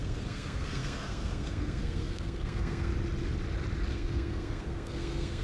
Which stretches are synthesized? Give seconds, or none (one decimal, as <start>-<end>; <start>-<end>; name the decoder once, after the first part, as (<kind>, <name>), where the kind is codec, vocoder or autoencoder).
0.0-2.9 (codec, SNAC); 3.9-5.4